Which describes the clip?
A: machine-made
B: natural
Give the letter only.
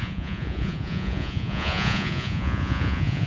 A